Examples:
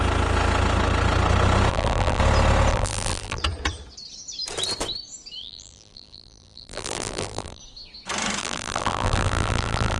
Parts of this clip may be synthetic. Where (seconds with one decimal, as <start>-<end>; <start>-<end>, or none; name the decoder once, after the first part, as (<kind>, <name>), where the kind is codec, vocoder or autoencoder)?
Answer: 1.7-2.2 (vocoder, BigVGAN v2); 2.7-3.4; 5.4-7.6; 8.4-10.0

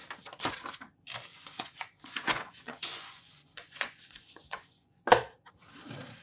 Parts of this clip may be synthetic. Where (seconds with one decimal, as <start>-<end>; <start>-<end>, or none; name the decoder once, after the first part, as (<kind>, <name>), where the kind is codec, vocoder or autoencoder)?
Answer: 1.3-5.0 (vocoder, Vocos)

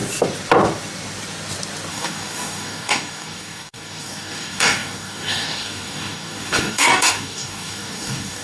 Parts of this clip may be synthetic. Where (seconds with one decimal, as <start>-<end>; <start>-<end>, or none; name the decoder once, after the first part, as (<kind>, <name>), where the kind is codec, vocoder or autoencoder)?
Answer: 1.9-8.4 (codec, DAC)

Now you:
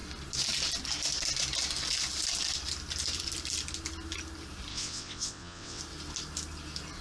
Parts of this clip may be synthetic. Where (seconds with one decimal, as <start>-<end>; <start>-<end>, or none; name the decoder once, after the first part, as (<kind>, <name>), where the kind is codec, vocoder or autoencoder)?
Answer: 4.7-5.8 (vocoder, WaveNeXt)

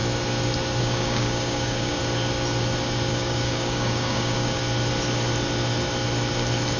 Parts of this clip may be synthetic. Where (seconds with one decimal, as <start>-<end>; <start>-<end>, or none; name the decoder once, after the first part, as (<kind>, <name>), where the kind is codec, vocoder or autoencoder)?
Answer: 0.8-2.0 (codec, DAC); 3.1-4.6

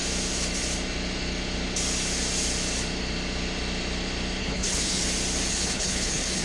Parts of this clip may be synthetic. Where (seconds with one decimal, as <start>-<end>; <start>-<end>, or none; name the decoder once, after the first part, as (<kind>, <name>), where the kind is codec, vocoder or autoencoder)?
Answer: 4.4-5.0 (codec, HILCodec); 5.5-6.4